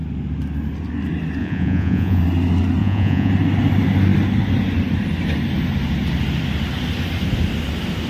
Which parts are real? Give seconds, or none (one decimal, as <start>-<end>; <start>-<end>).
0.0-1.4; 2.2-2.8; 3.3-8.1